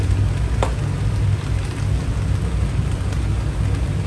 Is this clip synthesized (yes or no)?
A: no